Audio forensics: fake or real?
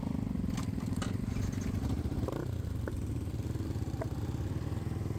real